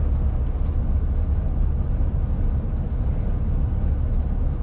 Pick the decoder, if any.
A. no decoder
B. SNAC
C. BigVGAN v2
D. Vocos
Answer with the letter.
A